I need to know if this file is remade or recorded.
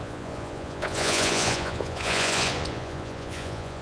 remade